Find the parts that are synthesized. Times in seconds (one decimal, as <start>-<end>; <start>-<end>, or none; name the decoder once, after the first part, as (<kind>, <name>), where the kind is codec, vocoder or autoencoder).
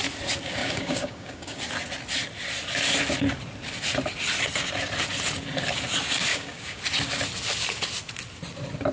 0.6-1.6 (codec, DAC); 6.3-6.8